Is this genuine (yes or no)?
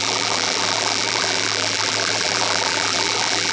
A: no